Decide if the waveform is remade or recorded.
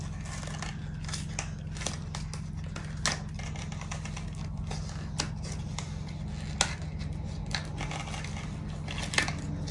recorded